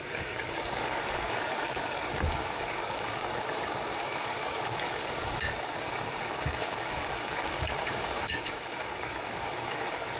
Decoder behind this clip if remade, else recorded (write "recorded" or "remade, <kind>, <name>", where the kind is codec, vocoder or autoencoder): remade, codec, DAC